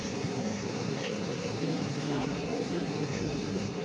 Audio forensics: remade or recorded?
remade